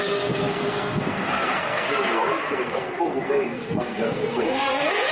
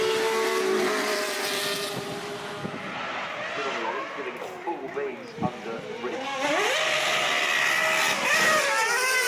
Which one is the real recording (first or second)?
second